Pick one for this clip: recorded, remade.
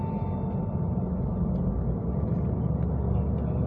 recorded